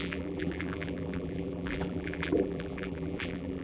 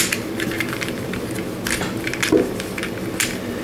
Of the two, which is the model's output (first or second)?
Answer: first